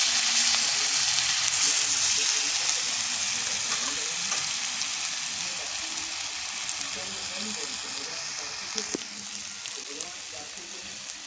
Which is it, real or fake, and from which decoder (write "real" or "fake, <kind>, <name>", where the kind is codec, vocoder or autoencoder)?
real